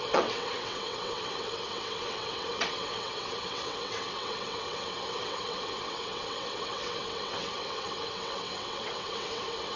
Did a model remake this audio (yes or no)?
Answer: yes